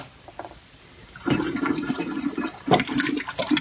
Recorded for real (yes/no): no